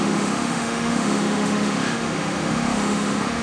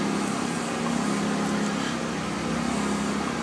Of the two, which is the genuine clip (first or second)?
second